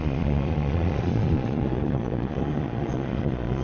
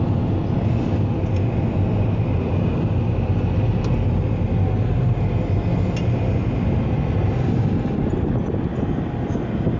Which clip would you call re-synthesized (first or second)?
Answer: first